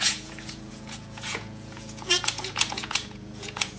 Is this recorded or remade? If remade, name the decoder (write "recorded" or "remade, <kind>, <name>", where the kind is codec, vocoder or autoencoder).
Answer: remade, vocoder, Vocos